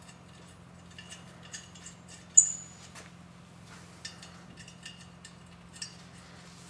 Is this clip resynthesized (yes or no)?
no